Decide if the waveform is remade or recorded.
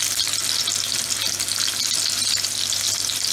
recorded